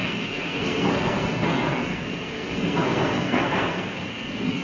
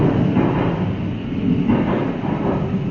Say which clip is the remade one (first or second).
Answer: first